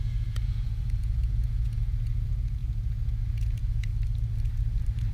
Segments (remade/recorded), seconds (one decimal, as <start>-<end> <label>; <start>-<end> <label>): 0.0-3.9 remade; 3.9-5.1 recorded